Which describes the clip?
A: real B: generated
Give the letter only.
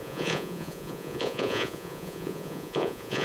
B